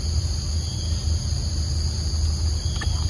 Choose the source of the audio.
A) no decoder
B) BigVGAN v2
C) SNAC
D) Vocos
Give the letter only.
A